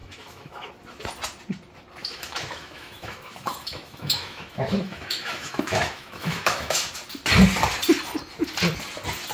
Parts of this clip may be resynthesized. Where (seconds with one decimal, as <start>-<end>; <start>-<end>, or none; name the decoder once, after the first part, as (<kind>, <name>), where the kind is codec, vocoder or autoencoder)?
0.0-0.7 (autoencoder, DAC-VAE); 2.0-6.9

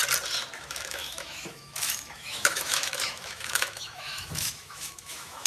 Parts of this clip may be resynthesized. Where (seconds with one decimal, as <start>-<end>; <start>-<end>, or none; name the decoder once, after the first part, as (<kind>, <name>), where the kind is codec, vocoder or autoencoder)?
0.5-5.5 (autoencoder, DAC-VAE)

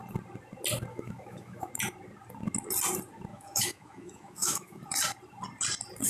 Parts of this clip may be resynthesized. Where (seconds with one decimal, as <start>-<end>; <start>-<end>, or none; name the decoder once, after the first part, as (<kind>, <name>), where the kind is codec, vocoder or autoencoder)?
0.9-1.7 (autoencoder, DAC-VAE); 3.3-4.8

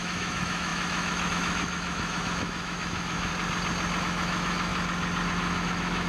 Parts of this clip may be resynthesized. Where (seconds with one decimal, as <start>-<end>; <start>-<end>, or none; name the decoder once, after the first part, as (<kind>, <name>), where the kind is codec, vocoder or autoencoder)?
0.0-3.3 (autoencoder, DAC-VAE); 4.0-4.7; 5.3-6.1